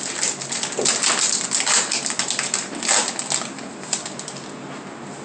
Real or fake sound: real